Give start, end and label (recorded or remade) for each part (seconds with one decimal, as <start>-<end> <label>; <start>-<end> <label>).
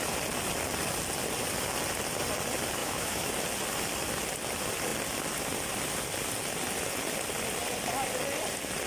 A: 0.0-2.8 recorded; 2.8-3.3 remade; 3.3-8.9 recorded